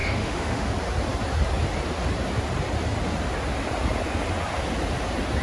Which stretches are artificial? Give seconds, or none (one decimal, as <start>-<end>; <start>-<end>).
0.0-0.7